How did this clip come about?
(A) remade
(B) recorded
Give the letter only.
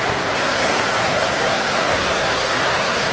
A